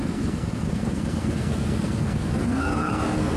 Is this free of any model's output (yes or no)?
no